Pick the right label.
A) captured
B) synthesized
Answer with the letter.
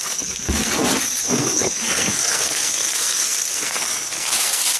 B